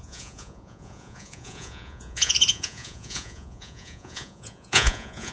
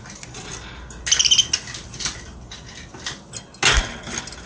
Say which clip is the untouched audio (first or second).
second